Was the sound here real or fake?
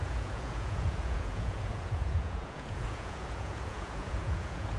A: fake